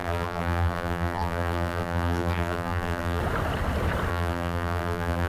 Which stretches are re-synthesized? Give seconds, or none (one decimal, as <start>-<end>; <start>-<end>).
0.0-3.2; 4.1-5.3